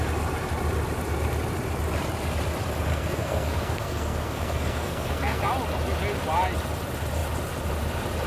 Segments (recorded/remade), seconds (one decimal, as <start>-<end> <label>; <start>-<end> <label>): 0.0-2.9 recorded; 2.9-5.4 remade; 5.4-8.3 recorded